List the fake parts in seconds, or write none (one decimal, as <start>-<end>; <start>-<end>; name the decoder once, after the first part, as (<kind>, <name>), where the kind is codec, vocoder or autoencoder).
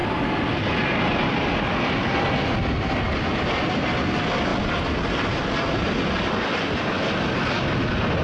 none